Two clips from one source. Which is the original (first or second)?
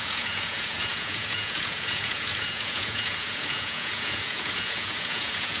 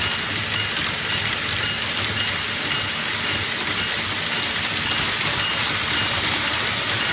second